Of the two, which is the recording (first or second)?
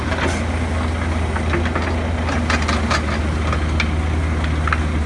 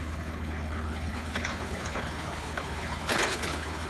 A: first